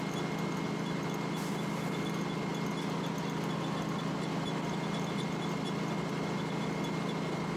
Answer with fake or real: real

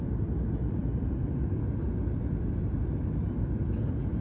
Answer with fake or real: real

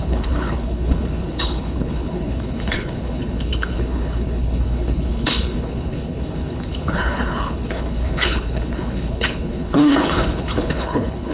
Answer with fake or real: fake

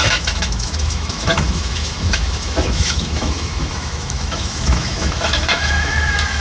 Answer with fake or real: fake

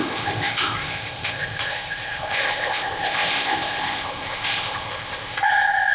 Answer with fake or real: fake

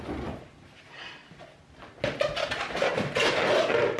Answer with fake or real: real